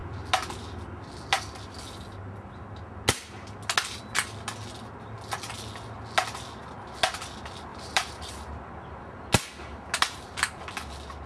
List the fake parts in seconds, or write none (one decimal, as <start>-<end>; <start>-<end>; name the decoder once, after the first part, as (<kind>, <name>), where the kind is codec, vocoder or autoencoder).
7.7-8.3 (vocoder, BigVGAN v2)